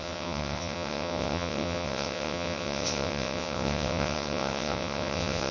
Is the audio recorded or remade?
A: remade